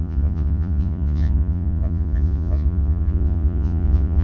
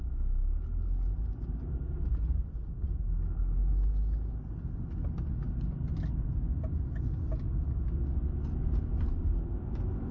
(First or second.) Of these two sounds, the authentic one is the second